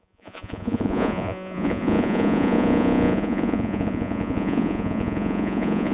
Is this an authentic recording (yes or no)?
no